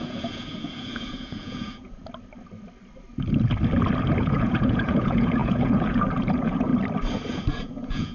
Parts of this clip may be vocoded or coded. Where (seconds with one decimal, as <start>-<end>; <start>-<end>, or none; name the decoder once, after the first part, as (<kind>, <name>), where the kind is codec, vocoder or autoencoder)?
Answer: 0.0-2.0 (vocoder, Vocos); 4.2-6.7; 7.3-8.1